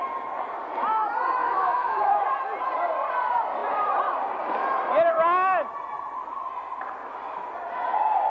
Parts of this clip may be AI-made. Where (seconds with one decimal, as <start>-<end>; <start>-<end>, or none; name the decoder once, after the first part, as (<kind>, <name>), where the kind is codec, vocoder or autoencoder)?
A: 1.4-2.2 (autoencoder, DAC-VAE)